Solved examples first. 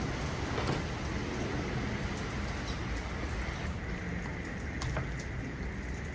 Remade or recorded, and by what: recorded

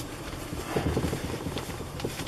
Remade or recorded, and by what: remade, vocoder, BigVGAN v2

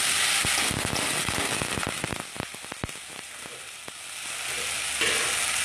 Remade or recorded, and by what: recorded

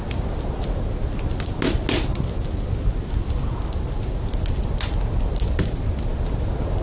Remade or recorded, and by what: recorded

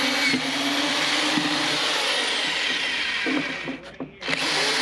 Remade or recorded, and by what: recorded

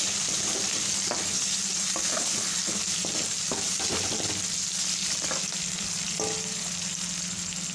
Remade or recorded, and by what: recorded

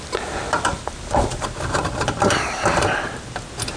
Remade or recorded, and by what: recorded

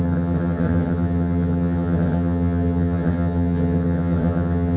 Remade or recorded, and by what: remade, vocoder, HiFi-GAN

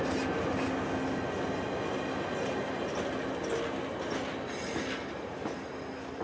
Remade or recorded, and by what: recorded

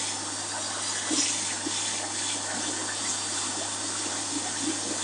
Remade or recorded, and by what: recorded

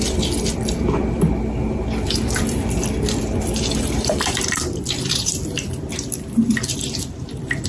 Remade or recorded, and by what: remade, vocoder, BigVGAN v2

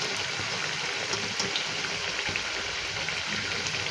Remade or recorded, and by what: recorded